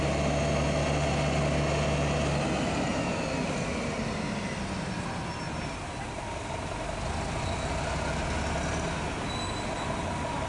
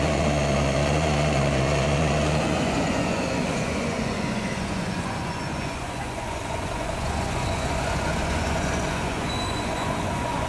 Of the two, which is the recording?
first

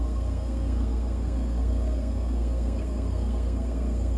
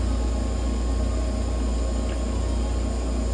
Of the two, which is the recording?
second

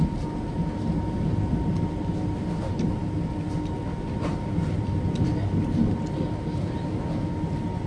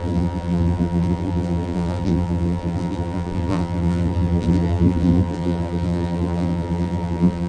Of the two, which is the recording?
first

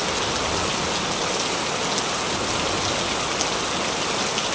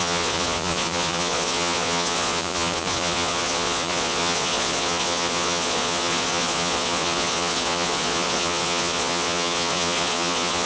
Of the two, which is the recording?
first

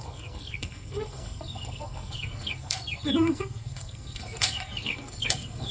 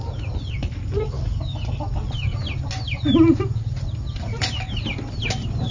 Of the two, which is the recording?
second